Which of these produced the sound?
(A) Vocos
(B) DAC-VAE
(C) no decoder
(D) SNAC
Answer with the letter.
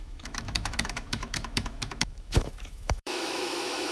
B